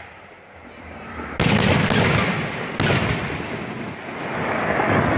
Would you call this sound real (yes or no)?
yes